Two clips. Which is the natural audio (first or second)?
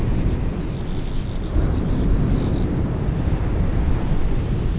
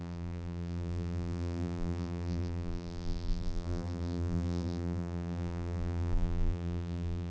first